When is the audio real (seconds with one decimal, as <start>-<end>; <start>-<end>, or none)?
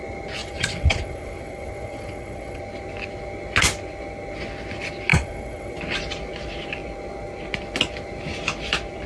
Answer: 0.0-0.4; 2.6-5.1; 5.8-9.1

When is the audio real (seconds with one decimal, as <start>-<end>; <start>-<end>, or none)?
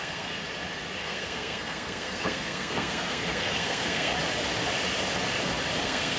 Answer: 0.4-1.0; 4.1-5.8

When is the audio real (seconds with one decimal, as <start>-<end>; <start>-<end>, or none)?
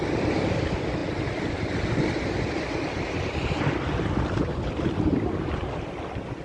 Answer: 0.0-6.4